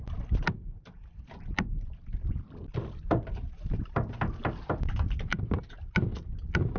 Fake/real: real